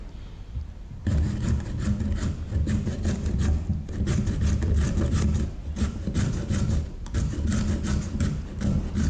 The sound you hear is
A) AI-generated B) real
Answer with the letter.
A